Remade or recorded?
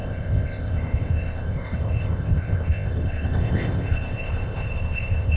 remade